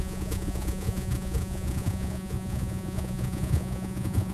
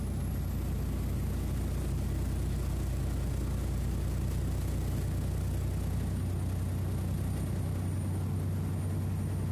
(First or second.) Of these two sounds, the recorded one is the second